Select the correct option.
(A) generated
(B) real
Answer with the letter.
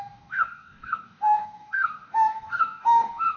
A